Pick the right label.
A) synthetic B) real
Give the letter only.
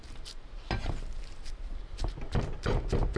A